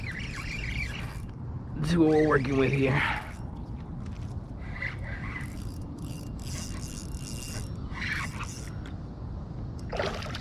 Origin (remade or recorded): recorded